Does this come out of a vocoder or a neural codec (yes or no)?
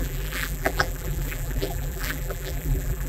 yes